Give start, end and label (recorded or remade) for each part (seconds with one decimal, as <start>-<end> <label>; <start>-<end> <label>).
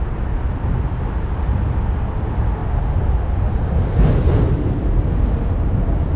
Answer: 0.0-6.2 recorded